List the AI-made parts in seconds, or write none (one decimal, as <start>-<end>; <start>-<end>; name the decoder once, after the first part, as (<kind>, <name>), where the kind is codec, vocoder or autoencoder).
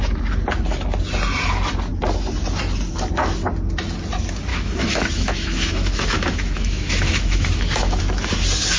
4.5-8.0 (autoencoder, DAC-VAE)